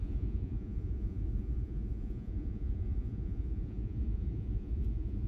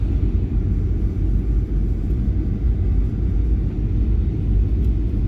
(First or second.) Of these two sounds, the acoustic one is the second